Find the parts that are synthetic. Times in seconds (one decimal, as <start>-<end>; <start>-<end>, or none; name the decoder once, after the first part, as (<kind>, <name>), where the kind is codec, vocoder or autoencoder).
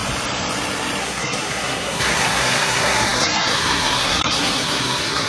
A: 1.0-5.3 (codec, SNAC)